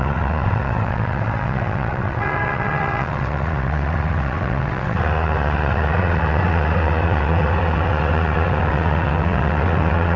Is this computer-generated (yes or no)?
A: yes